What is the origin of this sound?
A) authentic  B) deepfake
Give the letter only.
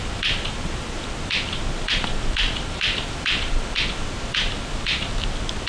A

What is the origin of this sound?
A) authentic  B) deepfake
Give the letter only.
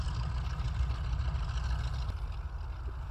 A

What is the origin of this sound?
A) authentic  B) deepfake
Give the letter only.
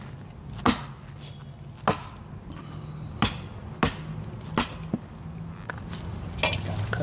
A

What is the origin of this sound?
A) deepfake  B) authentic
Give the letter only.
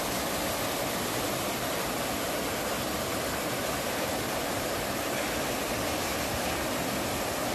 B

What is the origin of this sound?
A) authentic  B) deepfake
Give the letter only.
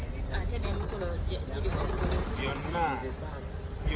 A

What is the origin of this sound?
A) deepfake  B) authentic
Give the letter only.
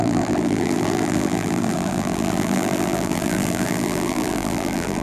A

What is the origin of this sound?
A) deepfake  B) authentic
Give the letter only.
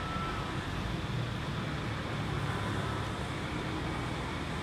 B